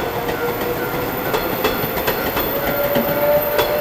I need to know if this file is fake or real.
real